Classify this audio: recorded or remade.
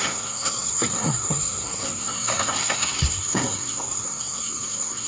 remade